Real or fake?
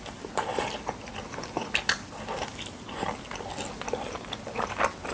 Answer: real